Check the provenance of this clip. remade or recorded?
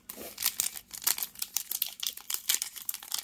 recorded